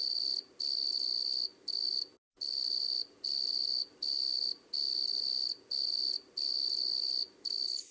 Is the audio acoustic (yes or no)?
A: yes